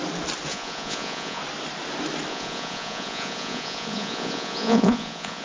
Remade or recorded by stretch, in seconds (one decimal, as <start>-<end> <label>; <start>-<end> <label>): 0.0-0.5 recorded; 0.5-1.4 remade; 1.4-2.3 recorded; 2.3-5.4 remade